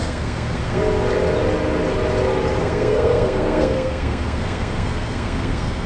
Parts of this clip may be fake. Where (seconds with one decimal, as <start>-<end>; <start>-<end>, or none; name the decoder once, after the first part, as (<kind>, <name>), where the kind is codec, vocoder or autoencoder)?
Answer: 0.0-0.8 (codec, SNAC); 2.6-5.9